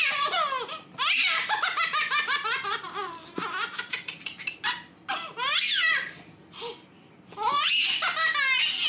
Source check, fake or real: real